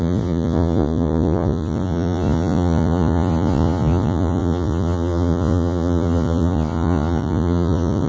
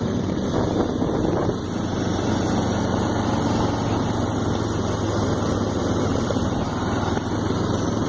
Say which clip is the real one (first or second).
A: second